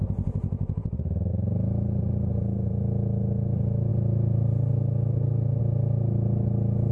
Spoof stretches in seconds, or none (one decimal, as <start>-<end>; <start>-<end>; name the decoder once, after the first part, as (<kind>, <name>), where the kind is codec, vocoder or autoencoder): none